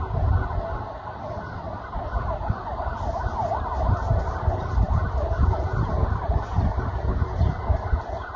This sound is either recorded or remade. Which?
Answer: recorded